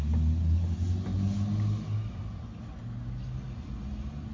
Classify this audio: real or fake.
real